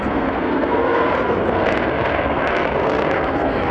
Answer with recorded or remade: remade